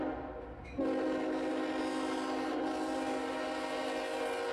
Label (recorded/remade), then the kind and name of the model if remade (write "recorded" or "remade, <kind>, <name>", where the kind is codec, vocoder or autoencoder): recorded